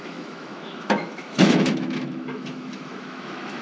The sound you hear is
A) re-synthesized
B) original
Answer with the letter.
A